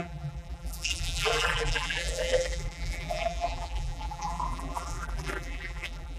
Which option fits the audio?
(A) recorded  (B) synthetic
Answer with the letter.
B